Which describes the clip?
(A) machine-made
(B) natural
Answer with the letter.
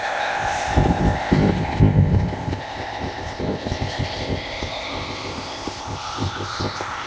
A